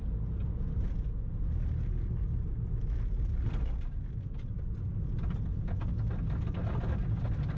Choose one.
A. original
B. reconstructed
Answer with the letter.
A